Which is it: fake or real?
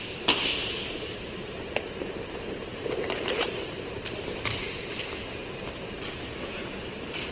fake